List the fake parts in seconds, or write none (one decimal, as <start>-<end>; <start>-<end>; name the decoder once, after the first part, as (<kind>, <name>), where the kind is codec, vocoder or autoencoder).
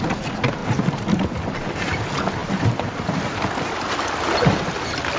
none